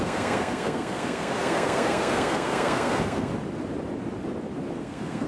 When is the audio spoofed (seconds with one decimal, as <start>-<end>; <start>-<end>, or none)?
0.0-3.3; 4.8-5.3